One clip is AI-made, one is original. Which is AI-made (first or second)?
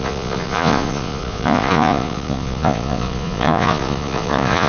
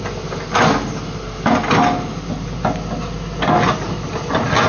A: first